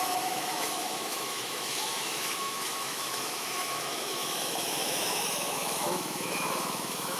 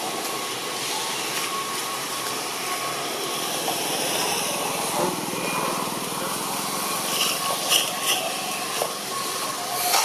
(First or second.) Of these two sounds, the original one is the second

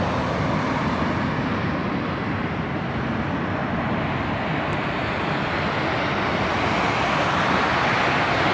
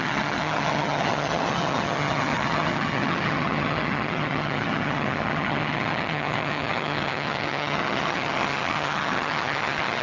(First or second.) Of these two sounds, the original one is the first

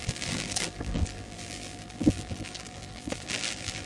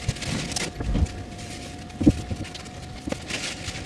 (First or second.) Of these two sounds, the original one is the second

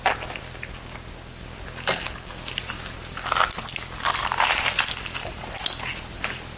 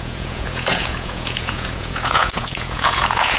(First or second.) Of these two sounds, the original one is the first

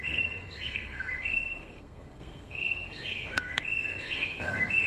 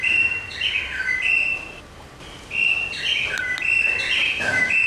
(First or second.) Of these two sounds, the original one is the second